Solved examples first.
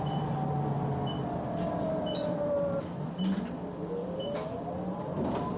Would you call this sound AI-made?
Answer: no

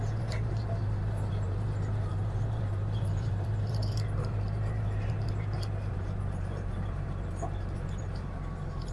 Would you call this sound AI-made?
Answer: yes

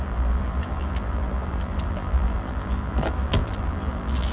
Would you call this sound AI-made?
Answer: yes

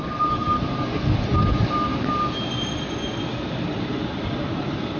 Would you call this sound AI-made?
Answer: no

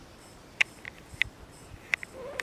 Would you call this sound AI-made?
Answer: no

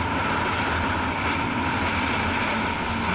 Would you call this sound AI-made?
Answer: no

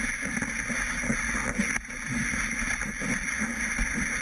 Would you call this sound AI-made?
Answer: no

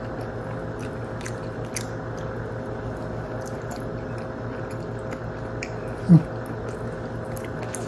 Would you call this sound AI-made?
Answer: no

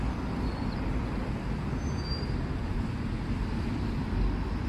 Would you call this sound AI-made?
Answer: no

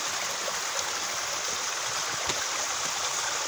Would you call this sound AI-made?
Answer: no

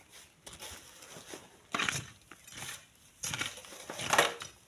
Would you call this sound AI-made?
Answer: no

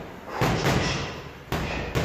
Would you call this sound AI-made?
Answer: no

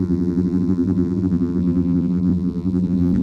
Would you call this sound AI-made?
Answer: yes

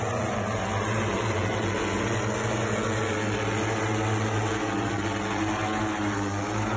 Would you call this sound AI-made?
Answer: no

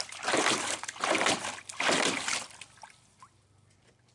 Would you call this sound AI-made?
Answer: yes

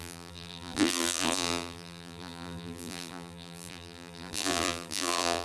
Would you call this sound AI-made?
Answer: yes